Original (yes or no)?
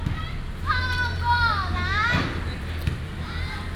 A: yes